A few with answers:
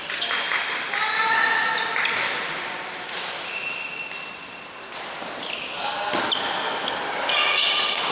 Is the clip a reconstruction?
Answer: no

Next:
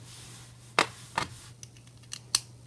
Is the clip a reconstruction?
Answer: no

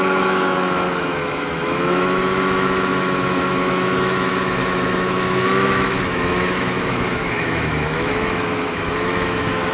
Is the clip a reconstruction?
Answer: yes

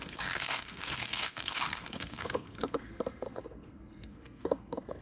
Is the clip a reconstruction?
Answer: yes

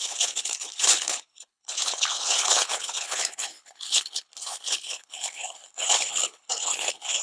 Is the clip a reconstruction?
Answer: yes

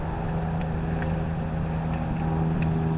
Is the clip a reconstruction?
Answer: yes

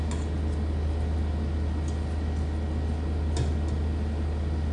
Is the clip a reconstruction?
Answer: no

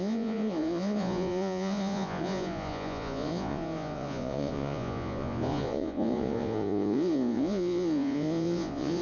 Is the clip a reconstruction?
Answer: yes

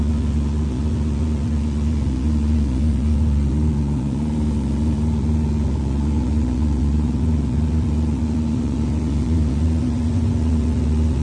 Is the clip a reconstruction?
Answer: yes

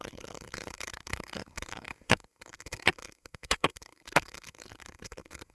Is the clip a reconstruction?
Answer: yes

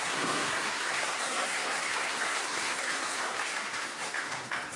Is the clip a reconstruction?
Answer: yes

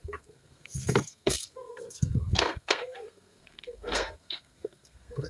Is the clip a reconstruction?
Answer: yes